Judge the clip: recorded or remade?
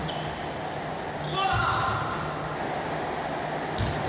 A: recorded